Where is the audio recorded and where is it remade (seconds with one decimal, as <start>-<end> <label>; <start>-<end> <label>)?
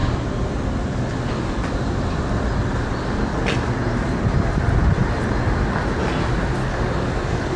0.0-6.6 recorded; 6.6-7.6 remade